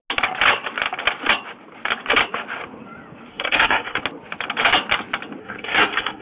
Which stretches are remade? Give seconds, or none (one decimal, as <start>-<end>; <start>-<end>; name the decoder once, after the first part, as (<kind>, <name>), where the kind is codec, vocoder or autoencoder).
3.3-4.0 (codec, SNAC); 5.4-6.2

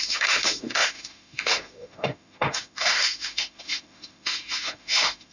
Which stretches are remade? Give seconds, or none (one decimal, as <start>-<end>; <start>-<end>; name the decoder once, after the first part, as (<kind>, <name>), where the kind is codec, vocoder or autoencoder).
0.0-5.3 (autoencoder, DAC-VAE)

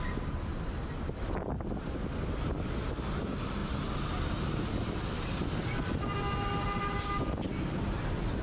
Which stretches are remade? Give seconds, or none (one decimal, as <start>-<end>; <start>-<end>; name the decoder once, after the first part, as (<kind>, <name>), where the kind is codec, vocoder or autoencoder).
none

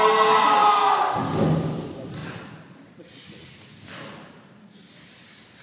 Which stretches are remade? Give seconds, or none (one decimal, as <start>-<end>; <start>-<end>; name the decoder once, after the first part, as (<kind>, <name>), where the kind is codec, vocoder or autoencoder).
none

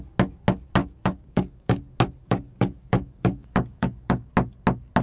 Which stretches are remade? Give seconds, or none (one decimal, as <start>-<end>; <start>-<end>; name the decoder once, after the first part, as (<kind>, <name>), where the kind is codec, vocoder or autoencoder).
0.8-1.8 (codec, DAC); 2.2-4.3

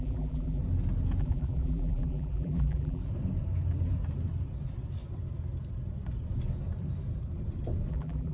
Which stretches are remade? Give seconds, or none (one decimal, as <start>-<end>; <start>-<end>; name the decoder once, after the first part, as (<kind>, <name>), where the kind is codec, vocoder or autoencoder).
0.0-0.6 (vocoder, BigVGAN v2); 1.2-3.0; 7.9-8.3